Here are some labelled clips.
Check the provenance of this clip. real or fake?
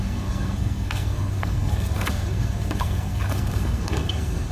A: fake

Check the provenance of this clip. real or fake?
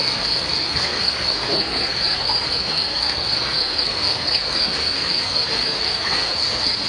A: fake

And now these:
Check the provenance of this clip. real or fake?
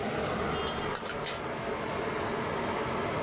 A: real